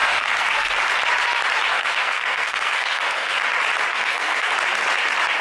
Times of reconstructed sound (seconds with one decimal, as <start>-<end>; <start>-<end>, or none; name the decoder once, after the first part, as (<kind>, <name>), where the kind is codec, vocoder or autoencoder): 0.0-0.7 (codec, SNAC); 1.7-3.4; 3.9-4.5